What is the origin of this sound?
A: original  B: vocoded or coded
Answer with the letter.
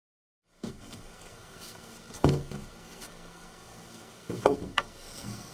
B